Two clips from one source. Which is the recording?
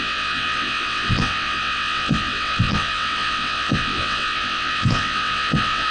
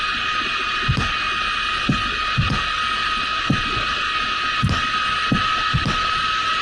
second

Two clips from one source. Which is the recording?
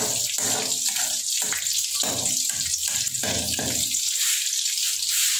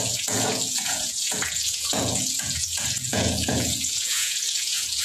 first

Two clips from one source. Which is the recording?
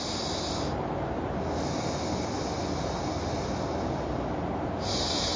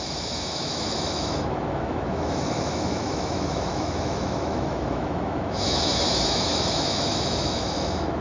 first